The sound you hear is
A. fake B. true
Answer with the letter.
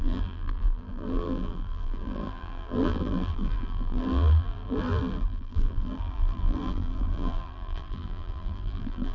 A